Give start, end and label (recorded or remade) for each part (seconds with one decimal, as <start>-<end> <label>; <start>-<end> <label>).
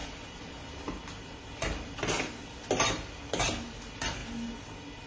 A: 0.0-5.1 recorded